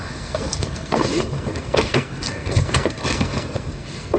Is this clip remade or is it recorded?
remade